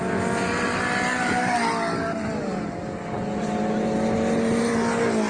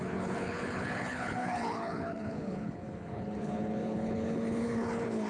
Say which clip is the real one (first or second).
first